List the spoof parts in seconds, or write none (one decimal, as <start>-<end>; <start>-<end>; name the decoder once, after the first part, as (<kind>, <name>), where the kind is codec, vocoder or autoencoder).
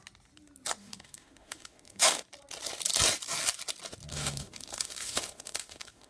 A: 0.8-2.2 (autoencoder, DAC-VAE); 4.1-6.1